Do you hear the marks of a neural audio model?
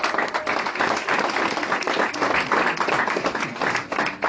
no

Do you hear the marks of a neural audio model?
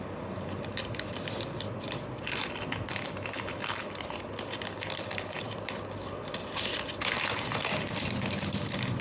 no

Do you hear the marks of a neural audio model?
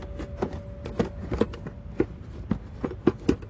no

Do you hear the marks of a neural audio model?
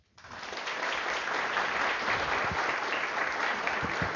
no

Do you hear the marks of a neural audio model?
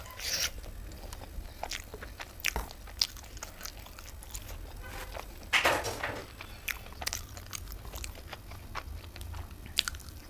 no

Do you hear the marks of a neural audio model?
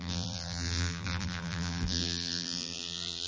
yes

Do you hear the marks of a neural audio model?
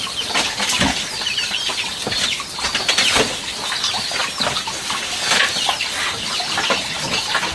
no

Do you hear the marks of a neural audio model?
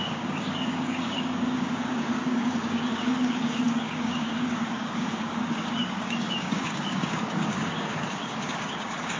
yes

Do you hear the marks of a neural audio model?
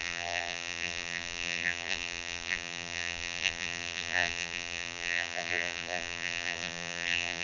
yes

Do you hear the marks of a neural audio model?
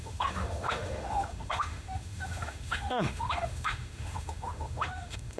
yes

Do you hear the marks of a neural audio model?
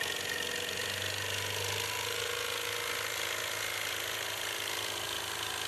no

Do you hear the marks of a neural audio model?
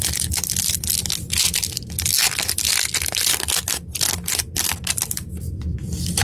no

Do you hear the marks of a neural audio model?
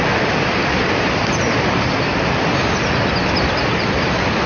no